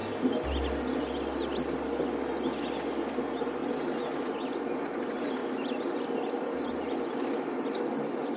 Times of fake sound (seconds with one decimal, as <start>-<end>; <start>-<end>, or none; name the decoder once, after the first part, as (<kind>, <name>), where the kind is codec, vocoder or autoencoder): none